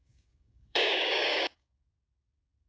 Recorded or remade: remade